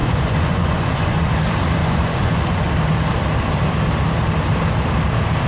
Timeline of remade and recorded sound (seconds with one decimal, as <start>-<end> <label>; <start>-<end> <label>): 0.0-1.3 remade; 1.3-1.8 recorded; 1.8-2.7 remade; 2.7-5.5 recorded